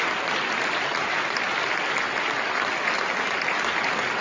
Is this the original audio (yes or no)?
yes